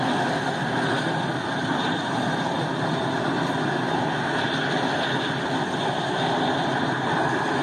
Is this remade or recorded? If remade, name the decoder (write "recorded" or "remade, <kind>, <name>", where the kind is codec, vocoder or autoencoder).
recorded